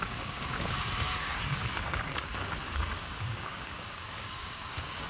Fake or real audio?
fake